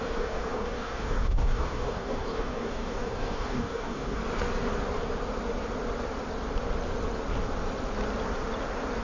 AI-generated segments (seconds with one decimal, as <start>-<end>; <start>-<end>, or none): 0.0-4.2